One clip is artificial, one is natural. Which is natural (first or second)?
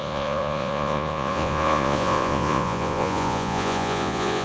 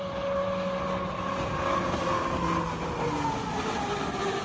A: second